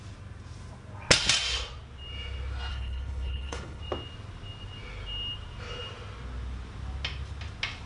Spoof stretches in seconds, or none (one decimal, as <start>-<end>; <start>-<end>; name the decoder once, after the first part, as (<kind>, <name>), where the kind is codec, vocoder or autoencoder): 2.7-3.8 (codec, HILCodec)